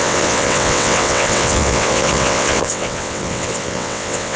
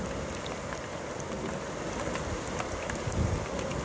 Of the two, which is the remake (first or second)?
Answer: first